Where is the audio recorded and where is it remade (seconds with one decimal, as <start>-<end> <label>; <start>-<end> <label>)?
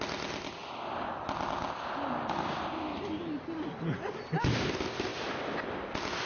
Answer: 0.0-6.3 recorded